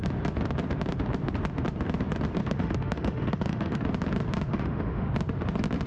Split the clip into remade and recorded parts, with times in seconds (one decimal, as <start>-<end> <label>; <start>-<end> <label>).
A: 0.0-2.4 recorded; 2.4-3.8 remade; 3.8-4.5 recorded; 4.5-5.1 remade; 5.1-5.9 recorded

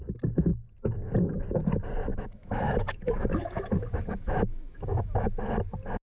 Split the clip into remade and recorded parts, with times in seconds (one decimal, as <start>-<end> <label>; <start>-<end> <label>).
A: 0.0-2.1 recorded; 2.1-5.2 remade; 5.2-6.2 recorded

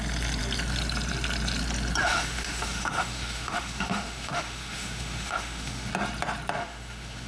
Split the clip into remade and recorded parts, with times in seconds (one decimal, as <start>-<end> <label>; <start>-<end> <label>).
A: 0.0-2.0 recorded; 2.0-5.9 remade; 5.9-6.6 recorded; 6.6-7.3 remade

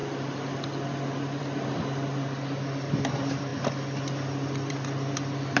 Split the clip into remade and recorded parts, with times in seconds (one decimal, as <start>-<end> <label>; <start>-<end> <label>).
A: 0.0-5.6 recorded

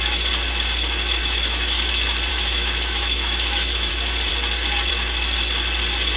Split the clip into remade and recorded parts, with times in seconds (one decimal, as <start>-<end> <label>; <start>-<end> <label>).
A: 0.0-1.2 recorded; 1.2-1.9 remade; 1.9-2.3 recorded; 2.3-3.9 remade; 3.9-6.2 recorded

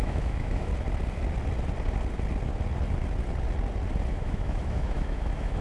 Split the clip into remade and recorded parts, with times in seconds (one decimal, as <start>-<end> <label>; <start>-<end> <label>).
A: 0.0-0.7 remade; 0.7-4.1 recorded; 4.1-5.6 remade

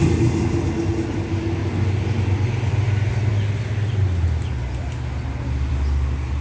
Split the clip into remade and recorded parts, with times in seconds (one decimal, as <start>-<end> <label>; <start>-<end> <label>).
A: 0.0-6.4 recorded